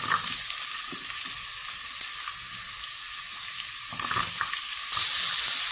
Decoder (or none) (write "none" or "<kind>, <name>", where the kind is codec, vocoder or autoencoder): none